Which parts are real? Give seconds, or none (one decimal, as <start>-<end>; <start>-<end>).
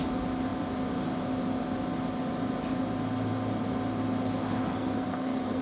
0.0-4.6